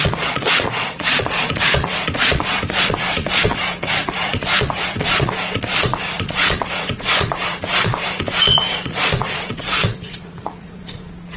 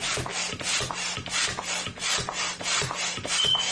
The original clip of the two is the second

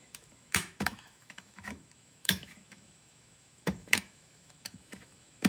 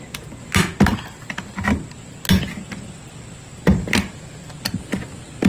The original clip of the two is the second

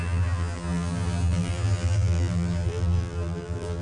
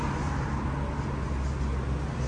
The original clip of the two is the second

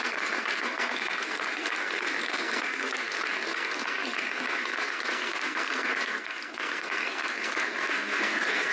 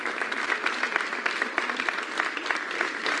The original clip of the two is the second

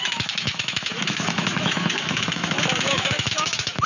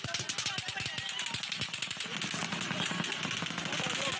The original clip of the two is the second